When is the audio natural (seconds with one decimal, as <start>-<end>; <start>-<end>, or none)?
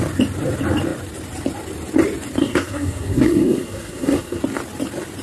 0.0-2.4; 4.4-5.2